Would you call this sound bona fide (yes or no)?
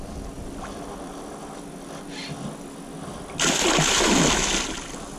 yes